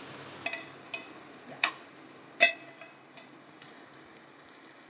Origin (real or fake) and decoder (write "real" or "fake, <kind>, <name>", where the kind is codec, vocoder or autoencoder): real